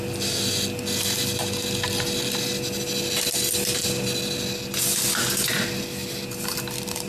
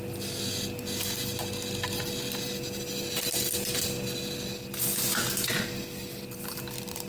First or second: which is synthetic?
second